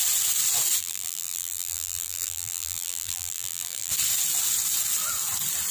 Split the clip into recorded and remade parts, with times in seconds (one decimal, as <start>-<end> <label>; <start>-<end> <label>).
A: 0.0-0.8 recorded; 0.8-3.9 remade; 3.9-5.7 recorded